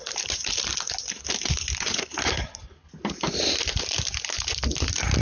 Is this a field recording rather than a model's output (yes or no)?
yes